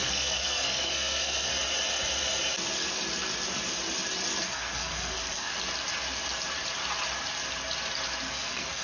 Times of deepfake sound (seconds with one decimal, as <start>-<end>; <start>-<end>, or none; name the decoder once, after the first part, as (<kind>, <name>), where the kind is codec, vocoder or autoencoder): 0.0-1.5 (codec, SNAC); 4.4-5.5; 8.3-8.8